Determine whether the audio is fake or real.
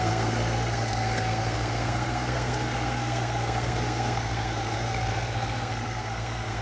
fake